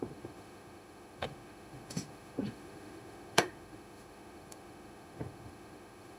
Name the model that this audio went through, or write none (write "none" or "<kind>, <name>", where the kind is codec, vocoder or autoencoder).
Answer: autoencoder, DAC-VAE